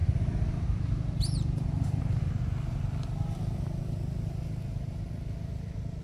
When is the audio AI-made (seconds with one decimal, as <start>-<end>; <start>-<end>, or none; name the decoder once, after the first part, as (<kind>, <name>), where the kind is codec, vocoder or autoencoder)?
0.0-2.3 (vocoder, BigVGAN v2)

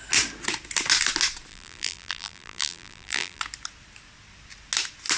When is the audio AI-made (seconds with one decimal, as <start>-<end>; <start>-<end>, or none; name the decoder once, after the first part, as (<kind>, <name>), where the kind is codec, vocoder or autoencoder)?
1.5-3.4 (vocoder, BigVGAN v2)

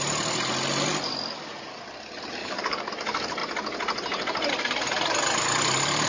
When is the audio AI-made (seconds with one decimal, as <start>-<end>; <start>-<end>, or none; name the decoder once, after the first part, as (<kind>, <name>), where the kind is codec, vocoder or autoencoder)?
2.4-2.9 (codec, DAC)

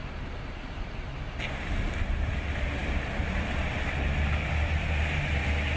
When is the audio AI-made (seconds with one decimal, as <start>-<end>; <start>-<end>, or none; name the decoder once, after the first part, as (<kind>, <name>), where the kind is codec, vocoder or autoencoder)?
none